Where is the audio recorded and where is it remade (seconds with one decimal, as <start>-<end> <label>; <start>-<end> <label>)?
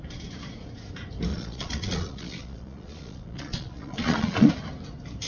0.0-1.3 recorded; 1.3-4.5 remade; 4.5-5.3 recorded